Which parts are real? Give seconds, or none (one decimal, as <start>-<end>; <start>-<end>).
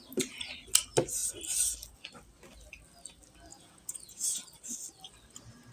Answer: 0.0-3.5; 4.4-5.7